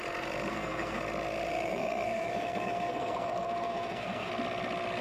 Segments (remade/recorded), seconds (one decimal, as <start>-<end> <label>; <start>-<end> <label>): 0.0-0.5 recorded; 0.5-1.0 remade; 1.0-1.5 recorded; 1.5-4.3 remade; 4.3-5.0 recorded